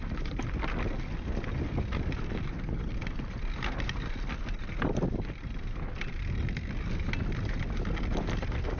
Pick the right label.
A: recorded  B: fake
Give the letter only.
A